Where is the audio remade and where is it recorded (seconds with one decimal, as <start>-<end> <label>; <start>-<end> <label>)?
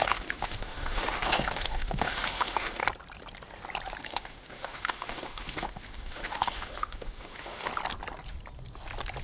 0.0-2.8 remade; 2.8-4.0 recorded; 4.0-7.7 remade; 7.7-9.2 recorded